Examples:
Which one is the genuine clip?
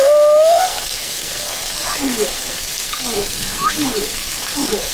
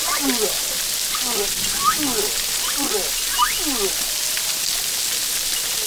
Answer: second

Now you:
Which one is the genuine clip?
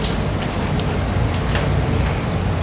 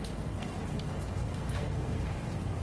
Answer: first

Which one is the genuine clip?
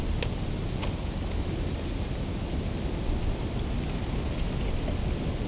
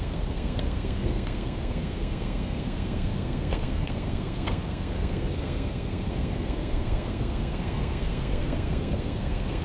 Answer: first